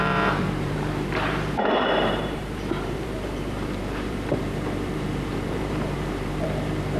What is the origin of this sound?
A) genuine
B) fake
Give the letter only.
B